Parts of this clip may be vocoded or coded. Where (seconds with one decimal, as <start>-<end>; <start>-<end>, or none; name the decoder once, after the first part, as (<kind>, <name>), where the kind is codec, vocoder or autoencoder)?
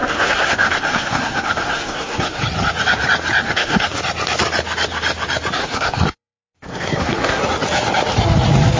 0.0-2.4 (codec, SNAC); 3.4-4.0; 5.6-7.4